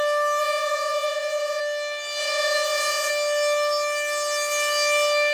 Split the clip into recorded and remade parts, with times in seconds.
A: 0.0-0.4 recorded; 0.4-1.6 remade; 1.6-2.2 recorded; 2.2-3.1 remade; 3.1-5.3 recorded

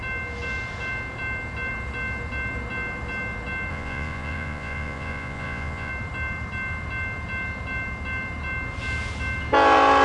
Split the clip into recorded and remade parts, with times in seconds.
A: 0.0-3.7 recorded; 3.7-5.9 remade; 5.9-10.0 recorded

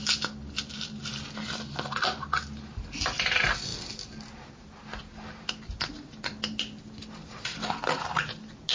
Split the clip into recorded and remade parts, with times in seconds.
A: 0.0-8.7 recorded

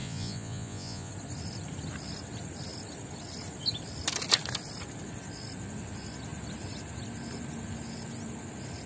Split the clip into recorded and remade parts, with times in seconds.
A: 0.0-1.1 remade; 1.1-8.9 recorded

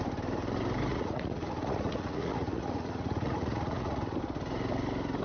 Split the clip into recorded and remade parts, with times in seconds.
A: 0.0-0.9 recorded; 0.9-4.0 remade; 4.0-5.2 recorded